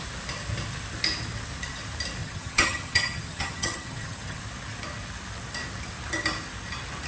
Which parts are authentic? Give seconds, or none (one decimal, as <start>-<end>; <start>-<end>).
0.0-2.2; 4.4-7.1